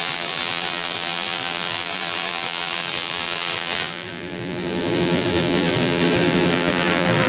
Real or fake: fake